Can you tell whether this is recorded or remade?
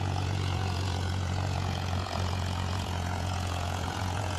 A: remade